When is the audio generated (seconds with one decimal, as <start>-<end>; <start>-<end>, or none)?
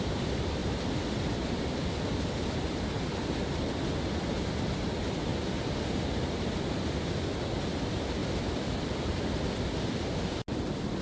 0.6-1.6; 5.3-7.0; 8.2-9.4